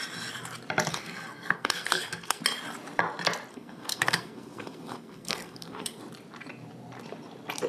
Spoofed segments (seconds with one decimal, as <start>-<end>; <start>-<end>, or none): 0.9-2.4; 3.5-6.0